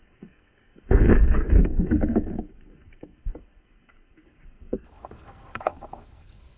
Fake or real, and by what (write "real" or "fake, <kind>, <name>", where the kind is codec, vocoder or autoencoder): fake, codec, SNAC